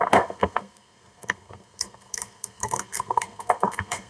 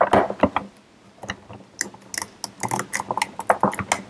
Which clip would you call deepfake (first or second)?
first